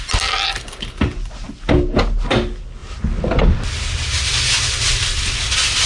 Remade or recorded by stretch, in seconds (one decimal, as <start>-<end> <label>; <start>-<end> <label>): 0.0-5.9 recorded